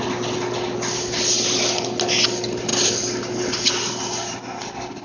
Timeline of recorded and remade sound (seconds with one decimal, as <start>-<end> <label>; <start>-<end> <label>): 0.0-5.0 recorded